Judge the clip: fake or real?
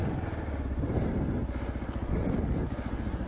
real